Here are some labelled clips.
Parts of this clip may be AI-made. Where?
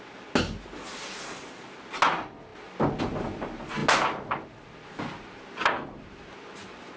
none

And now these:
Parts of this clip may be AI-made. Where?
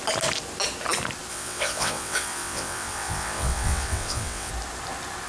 1.3-4.5 (vocoder, WaveNeXt)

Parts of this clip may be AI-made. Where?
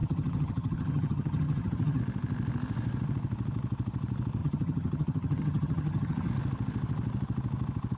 0.0-2.0 (vocoder, HiFi-GAN); 4.4-6.3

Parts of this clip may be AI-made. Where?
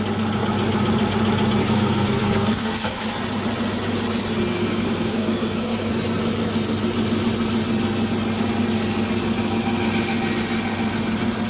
1.6-3.0 (codec, SNAC); 4.5-5.9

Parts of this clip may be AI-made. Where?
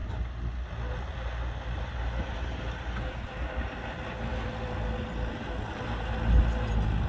none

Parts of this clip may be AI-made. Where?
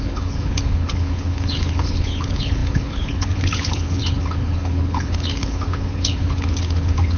0.0-7.2 (codec, HILCodec)